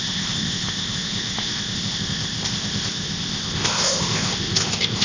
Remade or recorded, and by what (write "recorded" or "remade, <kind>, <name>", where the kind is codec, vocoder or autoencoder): remade, codec, ZipCodec